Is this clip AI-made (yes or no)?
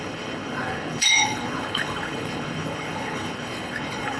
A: yes